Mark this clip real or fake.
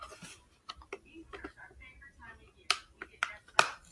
real